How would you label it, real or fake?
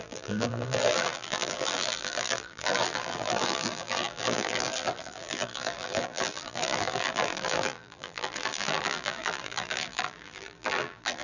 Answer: fake